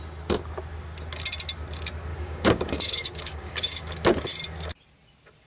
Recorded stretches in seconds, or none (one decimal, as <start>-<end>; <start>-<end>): 0.0-2.1; 3.9-5.5